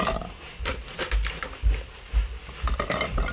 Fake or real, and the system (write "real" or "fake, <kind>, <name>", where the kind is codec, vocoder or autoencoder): real